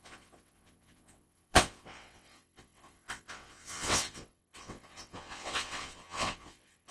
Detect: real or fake fake